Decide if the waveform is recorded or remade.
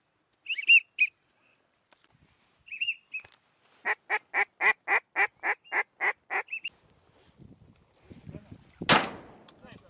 recorded